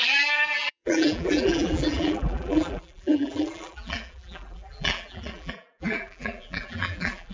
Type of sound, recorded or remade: remade